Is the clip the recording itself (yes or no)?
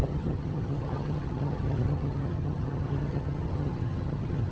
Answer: no